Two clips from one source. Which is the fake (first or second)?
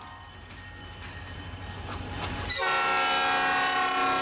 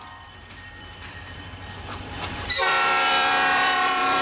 second